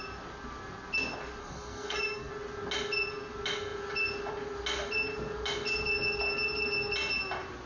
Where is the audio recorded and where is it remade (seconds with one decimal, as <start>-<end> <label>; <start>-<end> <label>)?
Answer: 0.0-1.4 recorded; 1.4-2.3 remade; 2.3-7.7 recorded